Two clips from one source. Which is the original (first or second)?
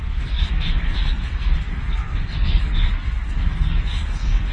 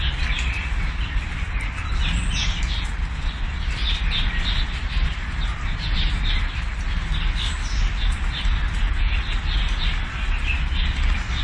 second